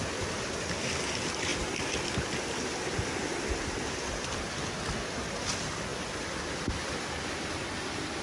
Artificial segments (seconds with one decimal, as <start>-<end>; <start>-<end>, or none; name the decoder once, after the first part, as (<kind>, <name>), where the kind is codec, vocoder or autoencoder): none